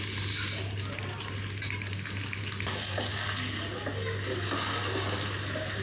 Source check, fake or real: real